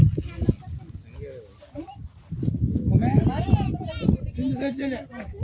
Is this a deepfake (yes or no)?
no